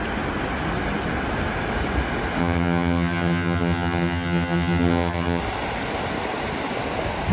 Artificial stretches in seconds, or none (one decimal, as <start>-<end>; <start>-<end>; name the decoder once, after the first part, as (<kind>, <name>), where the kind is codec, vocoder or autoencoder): 2.4-5.4 (vocoder, HiFi-GAN)